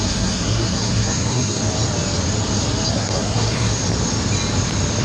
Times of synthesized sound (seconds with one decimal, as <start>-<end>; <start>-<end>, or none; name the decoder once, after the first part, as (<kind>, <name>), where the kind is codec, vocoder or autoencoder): 0.0-1.6 (codec, SNAC); 2.9-3.8